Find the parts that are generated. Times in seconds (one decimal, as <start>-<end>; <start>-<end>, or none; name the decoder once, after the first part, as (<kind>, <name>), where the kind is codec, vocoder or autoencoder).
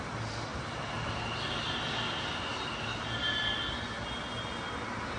none